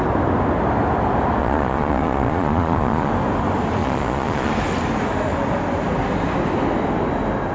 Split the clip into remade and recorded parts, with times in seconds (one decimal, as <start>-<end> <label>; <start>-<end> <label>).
0.0-1.4 recorded; 1.4-3.1 remade; 3.1-3.8 recorded; 3.8-4.5 remade; 4.5-7.5 recorded